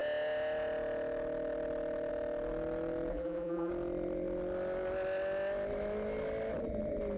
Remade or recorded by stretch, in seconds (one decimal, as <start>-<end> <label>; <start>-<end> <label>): 0.0-3.1 recorded; 3.1-3.7 remade; 3.7-7.2 recorded